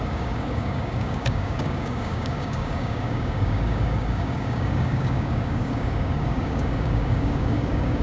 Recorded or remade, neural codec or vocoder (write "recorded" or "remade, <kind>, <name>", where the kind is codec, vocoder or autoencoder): remade, codec, DAC